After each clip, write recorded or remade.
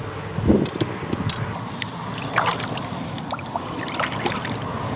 recorded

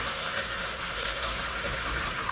remade